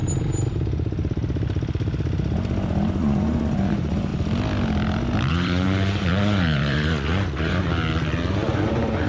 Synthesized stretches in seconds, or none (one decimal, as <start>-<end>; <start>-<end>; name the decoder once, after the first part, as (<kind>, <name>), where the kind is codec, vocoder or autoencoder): 3.0-4.1 (vocoder, Vocos); 5.3-7.7; 8.3-9.1